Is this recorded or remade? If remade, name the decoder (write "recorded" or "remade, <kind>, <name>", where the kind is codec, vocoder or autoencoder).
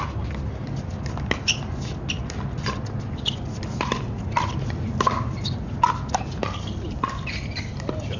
recorded